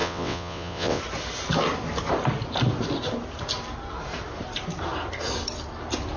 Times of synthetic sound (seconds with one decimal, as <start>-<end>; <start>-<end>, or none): 0.0-1.0